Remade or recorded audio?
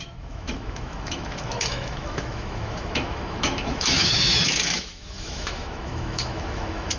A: remade